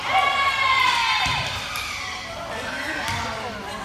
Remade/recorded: recorded